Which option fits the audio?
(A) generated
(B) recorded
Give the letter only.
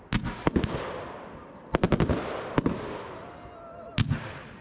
B